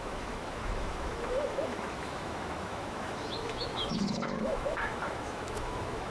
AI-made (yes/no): yes